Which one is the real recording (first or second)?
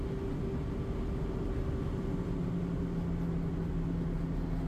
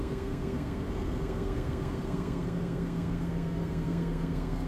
first